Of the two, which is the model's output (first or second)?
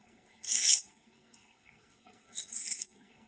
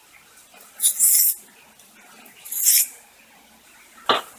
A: first